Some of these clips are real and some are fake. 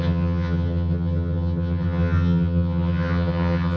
fake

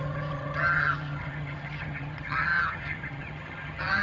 fake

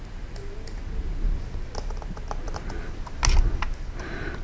real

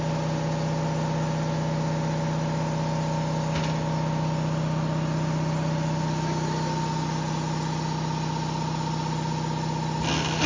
real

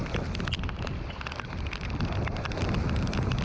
real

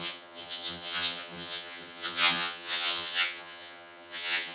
fake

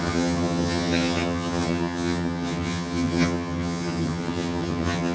fake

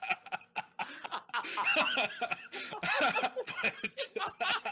real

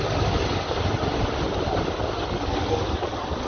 real